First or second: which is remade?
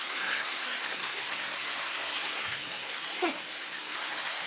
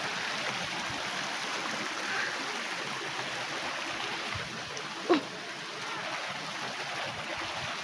first